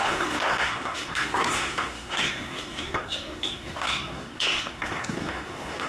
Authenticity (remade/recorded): remade